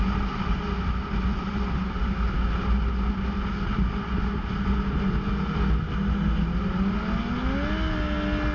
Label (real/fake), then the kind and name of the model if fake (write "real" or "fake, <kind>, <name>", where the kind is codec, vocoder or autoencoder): real